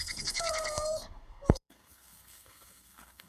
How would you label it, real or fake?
fake